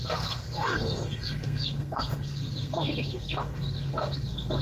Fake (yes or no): yes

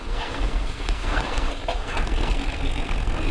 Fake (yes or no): yes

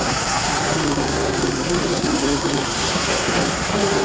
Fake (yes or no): yes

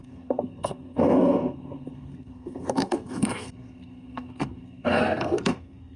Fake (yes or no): yes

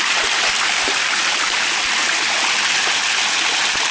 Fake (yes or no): no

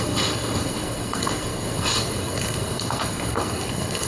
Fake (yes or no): yes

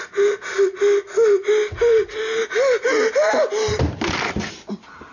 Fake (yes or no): no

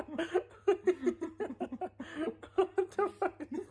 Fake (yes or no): no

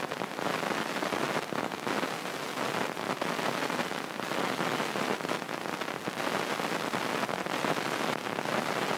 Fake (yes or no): no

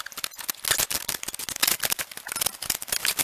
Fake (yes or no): no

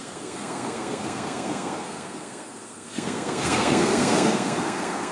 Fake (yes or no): yes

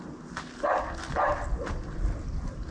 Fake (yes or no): no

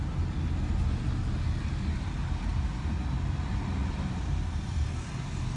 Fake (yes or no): no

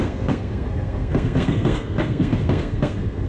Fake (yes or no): yes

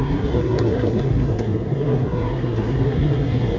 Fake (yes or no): yes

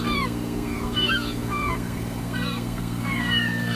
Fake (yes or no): yes